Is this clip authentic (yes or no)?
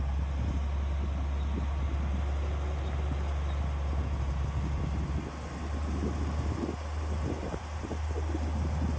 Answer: yes